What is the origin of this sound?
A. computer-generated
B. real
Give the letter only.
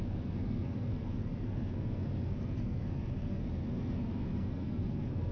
A